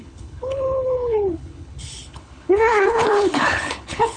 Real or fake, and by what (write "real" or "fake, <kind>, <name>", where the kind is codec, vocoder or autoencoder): fake, codec, HILCodec